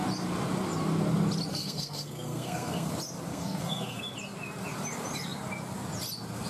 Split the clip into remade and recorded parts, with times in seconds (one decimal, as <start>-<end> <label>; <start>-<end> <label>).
0.0-1.5 recorded; 1.5-2.9 remade; 2.9-3.3 recorded; 3.3-4.0 remade; 4.0-6.5 recorded